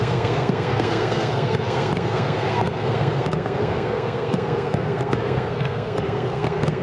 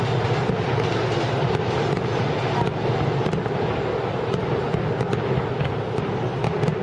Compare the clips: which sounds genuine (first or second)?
second